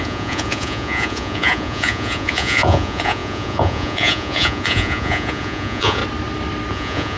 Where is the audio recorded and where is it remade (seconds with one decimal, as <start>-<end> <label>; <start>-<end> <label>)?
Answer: 0.0-6.0 remade; 6.0-6.7 recorded; 6.7-7.2 remade